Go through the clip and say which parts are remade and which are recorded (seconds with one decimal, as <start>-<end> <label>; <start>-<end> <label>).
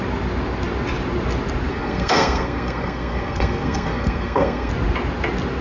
0.0-1.7 recorded; 1.7-4.7 remade; 4.7-5.6 recorded